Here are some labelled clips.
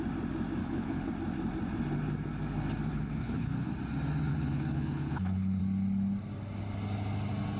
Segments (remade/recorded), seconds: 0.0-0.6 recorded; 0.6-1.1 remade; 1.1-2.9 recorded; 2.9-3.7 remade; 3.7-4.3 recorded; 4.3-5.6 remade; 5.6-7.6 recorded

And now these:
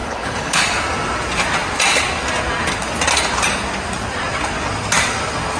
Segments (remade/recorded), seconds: 0.0-0.6 remade; 0.6-5.6 recorded